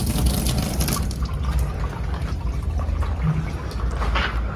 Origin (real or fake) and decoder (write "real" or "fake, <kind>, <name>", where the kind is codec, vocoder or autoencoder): real